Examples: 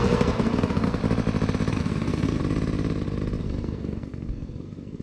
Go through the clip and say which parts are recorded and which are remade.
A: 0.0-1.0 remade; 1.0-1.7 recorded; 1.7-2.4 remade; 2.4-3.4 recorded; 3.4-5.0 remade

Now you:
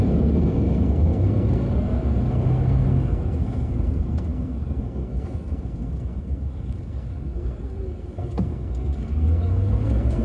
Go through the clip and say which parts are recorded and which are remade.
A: 0.0-10.2 remade

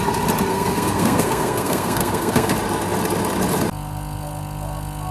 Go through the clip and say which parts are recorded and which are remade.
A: 0.0-0.5 recorded; 0.5-2.5 remade; 2.5-5.1 recorded

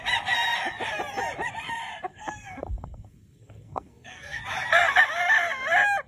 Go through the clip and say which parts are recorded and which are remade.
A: 0.0-2.1 recorded; 2.1-4.4 remade; 4.4-6.1 recorded

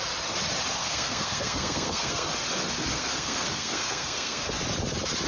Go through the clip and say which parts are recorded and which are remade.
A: 0.0-0.8 recorded; 0.8-2.3 remade; 2.3-2.9 recorded; 2.9-4.5 remade; 4.5-5.3 recorded

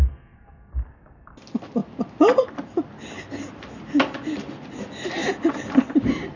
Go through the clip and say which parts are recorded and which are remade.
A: 0.0-0.7 remade; 0.7-6.4 recorded

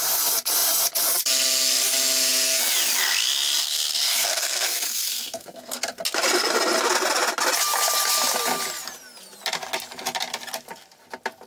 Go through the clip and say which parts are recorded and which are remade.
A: 0.0-3.6 recorded; 3.6-5.9 remade; 5.9-11.5 recorded